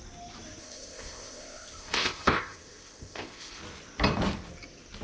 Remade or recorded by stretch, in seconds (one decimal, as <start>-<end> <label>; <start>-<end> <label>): 0.0-0.6 recorded; 0.6-3.6 remade; 3.6-5.0 recorded